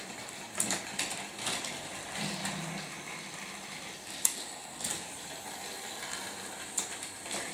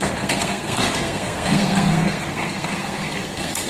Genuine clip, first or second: first